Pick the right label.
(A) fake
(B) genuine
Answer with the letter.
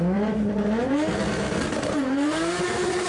A